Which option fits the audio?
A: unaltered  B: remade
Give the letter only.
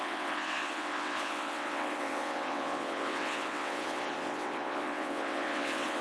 B